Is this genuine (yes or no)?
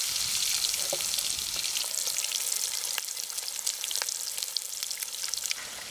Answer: yes